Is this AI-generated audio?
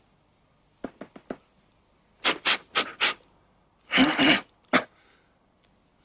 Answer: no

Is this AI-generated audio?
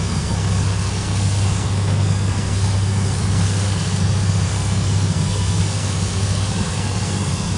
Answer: yes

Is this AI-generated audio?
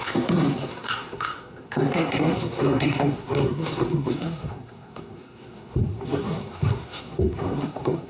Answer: yes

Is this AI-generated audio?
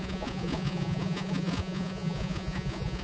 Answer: yes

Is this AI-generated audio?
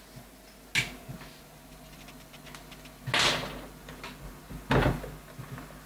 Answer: no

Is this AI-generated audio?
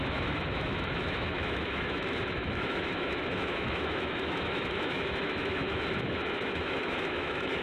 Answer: yes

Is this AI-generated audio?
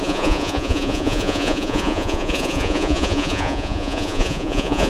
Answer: yes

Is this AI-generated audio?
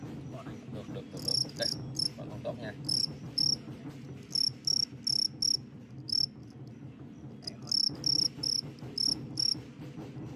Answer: no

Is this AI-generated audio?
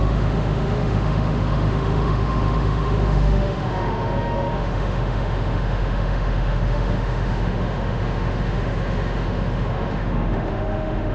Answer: yes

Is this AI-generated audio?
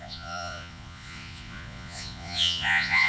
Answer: yes